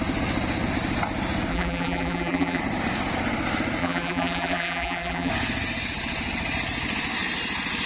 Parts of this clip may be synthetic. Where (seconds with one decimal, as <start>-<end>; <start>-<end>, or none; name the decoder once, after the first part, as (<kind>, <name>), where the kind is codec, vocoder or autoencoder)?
1.5-2.6 (vocoder, BigVGAN v2); 3.8-5.3